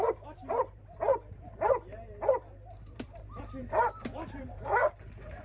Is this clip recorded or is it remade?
remade